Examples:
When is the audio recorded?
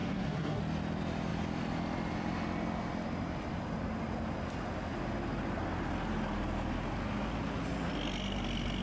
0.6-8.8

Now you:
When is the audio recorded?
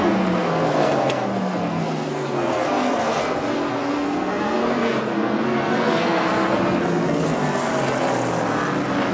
7.7-9.1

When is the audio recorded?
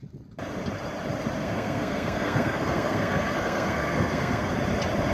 0.0-1.4; 4.5-5.1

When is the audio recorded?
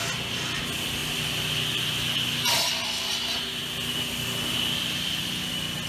0.0-5.9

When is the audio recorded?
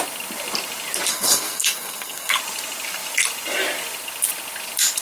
0.0-1.1; 2.3-5.0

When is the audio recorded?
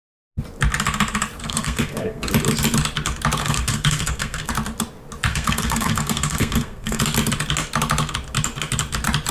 0.0-1.4; 2.3-3.4; 4.5-5.3; 7.0-9.3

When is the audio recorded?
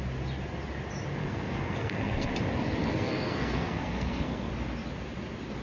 0.0-1.2; 2.3-2.8; 4.5-5.6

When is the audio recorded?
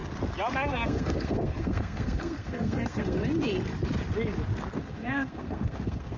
0.0-0.7; 3.2-4.8